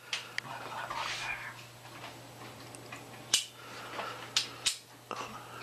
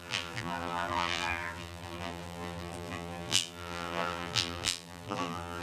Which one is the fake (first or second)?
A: second